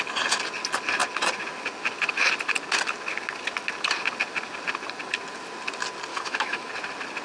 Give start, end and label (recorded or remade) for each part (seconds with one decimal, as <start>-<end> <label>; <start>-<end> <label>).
0.0-6.1 recorded; 6.1-6.7 remade; 6.7-7.2 recorded